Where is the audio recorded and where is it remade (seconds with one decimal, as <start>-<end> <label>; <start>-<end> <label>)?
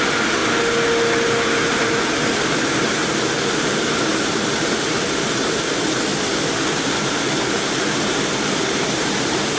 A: 0.0-0.4 remade; 0.4-1.5 recorded; 1.5-6.1 remade; 6.1-6.7 recorded; 6.7-9.6 remade